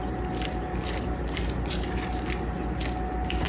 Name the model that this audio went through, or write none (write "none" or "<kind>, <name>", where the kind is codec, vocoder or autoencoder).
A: none